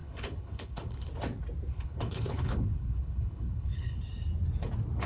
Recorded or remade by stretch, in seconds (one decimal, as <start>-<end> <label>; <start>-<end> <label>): 0.0-1.1 remade; 1.1-1.7 recorded; 1.7-4.0 remade; 4.0-5.1 recorded